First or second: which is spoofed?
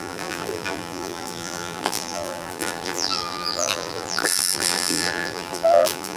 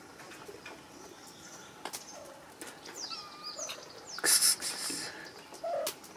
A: first